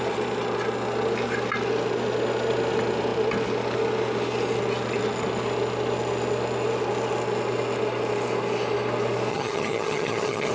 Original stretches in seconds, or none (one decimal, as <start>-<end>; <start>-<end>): 0.0-9.3